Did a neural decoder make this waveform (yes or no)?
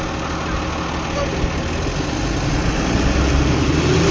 no